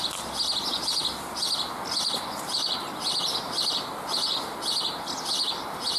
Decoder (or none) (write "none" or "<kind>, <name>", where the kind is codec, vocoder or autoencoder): none